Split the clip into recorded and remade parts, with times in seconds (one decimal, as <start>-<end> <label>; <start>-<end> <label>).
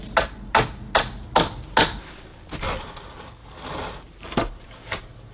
0.0-3.4 recorded; 3.4-3.9 remade; 3.9-5.3 recorded